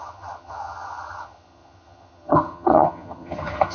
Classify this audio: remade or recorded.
remade